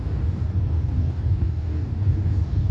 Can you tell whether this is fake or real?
fake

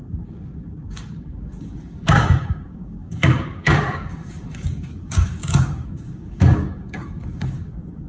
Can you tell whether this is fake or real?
fake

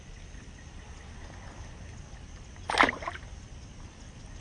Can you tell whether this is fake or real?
real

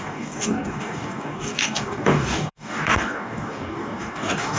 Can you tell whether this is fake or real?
fake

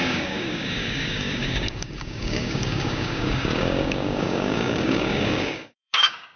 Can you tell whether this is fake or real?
fake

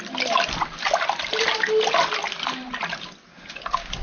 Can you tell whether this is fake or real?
real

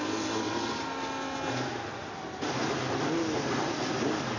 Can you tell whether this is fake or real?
real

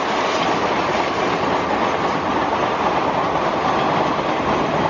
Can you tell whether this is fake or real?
real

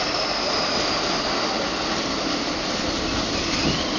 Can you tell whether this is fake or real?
real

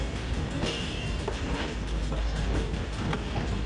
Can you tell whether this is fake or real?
fake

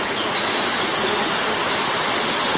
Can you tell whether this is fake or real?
real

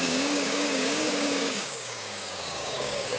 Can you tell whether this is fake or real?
fake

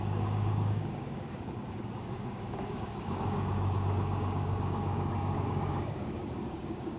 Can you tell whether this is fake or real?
fake